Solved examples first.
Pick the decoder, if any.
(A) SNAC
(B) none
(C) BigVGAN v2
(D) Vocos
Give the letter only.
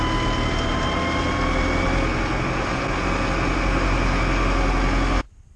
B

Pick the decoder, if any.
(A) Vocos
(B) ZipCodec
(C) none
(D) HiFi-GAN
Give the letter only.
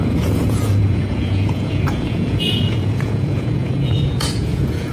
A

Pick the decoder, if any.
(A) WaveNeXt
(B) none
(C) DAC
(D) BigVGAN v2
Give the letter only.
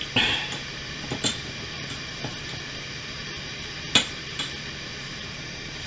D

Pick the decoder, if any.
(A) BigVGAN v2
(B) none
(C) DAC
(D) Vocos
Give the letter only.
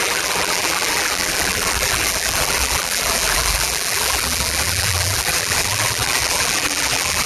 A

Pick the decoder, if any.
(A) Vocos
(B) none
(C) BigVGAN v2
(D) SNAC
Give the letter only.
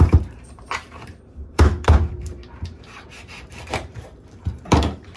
C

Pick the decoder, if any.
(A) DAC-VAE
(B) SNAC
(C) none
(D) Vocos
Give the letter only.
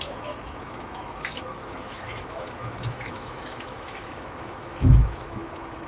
A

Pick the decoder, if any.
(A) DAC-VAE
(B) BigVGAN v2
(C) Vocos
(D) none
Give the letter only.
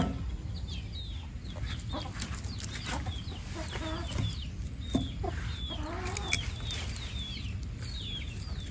D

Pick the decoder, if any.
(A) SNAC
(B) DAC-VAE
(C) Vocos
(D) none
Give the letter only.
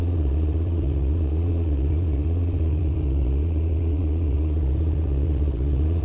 C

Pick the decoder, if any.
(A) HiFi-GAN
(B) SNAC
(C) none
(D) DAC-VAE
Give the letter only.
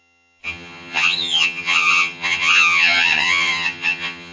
A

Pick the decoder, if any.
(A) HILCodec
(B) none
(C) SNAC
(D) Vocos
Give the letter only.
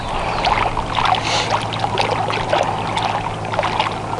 B